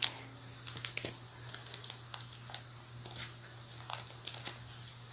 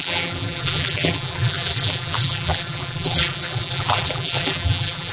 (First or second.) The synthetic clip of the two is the second